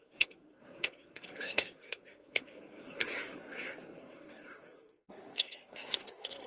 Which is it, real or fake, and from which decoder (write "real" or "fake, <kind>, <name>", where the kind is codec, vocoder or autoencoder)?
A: fake, codec, SNAC